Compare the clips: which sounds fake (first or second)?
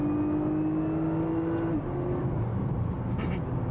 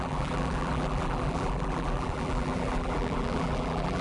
second